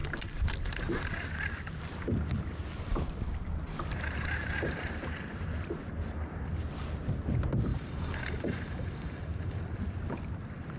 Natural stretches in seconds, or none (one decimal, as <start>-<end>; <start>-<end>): 0.0-7.7; 9.6-10.8